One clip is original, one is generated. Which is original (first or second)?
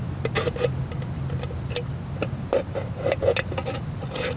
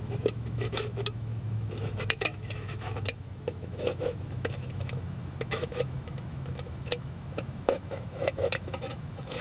first